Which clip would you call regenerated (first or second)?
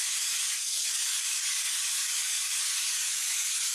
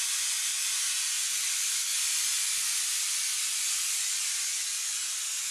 first